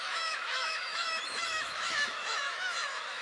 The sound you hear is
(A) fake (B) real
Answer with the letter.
A